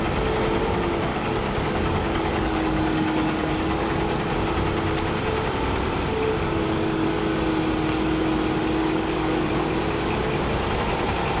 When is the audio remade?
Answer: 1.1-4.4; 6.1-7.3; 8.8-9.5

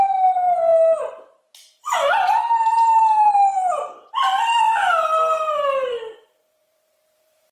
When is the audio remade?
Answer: none

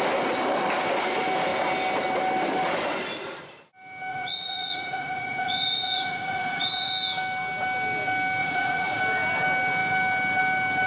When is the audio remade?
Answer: 4.1-6.9; 8.4-9.0